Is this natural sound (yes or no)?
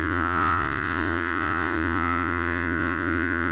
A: no